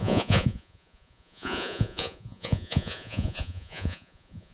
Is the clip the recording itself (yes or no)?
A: no